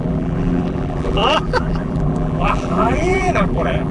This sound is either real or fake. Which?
fake